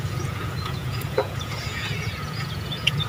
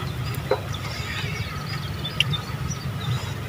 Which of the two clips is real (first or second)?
second